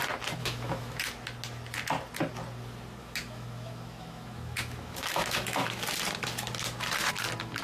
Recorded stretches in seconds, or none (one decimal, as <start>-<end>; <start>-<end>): 0.0-0.4; 1.0-3.0; 5.8-7.6